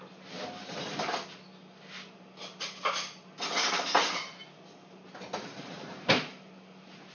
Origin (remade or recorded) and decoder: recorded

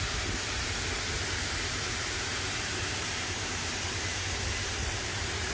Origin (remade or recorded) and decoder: remade, vocoder, BigVGAN v2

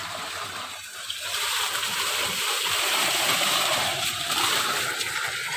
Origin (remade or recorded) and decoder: remade, vocoder, BigVGAN v2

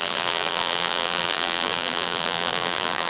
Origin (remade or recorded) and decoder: remade, vocoder, BigVGAN v2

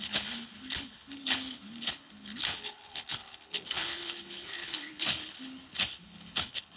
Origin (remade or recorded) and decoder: remade, codec, HILCodec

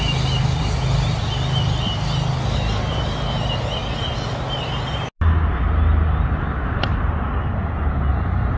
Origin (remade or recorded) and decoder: recorded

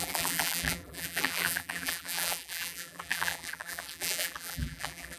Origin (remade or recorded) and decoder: remade, vocoder, BigVGAN v2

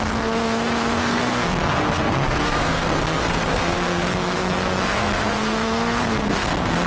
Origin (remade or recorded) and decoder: remade, codec, SNAC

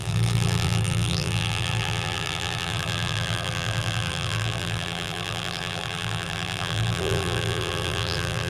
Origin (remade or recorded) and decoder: remade, vocoder, BigVGAN v2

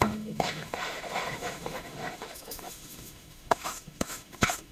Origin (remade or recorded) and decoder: remade, autoencoder, DAC-VAE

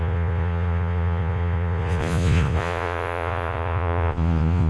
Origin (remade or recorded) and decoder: remade, vocoder, Vocos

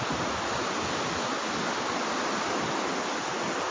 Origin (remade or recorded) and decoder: recorded